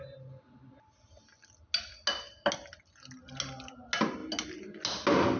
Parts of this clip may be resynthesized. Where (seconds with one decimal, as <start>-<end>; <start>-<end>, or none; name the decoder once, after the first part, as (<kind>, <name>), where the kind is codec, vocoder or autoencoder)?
none